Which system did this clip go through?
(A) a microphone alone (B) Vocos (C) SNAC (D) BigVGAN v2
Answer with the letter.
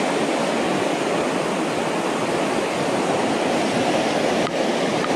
A